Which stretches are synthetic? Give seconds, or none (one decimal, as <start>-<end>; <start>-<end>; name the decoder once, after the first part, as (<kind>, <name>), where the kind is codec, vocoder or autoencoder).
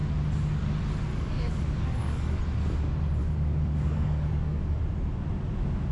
1.1-2.4 (codec, DAC); 3.2-4.8